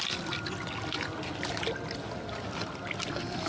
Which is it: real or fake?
real